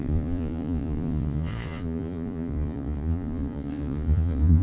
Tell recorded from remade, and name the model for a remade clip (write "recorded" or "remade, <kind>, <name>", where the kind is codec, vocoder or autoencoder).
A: remade, vocoder, Vocos